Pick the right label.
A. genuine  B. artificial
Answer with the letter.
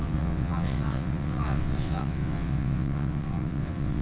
B